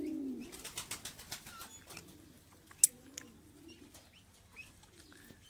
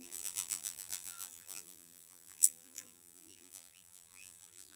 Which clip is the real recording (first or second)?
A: first